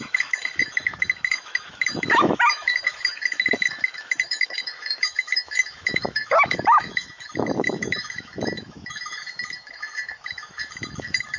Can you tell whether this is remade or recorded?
remade